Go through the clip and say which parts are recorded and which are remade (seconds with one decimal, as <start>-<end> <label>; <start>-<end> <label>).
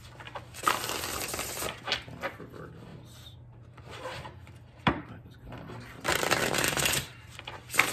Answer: 0.0-2.9 recorded; 2.9-7.4 remade; 7.4-7.9 recorded